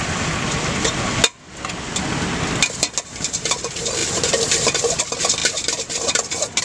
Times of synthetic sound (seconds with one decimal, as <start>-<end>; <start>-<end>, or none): 0.0-0.7; 4.0-5.0; 5.4-6.6